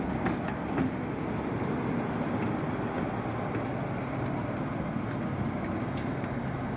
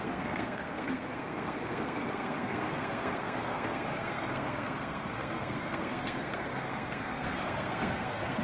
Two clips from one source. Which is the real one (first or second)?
first